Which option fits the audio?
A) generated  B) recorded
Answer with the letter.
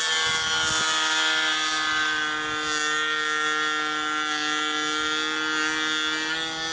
B